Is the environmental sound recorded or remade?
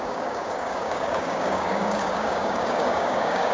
remade